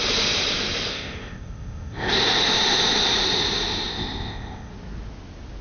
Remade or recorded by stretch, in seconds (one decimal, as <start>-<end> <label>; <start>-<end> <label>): 0.0-0.9 recorded; 0.9-2.1 remade; 2.1-3.9 recorded; 3.9-4.7 remade; 4.7-5.6 recorded